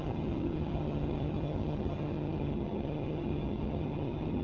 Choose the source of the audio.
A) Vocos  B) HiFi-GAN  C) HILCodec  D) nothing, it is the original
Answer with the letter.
B